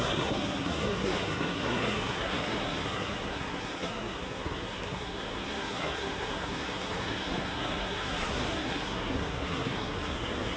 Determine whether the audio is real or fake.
fake